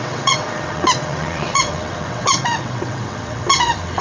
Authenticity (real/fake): fake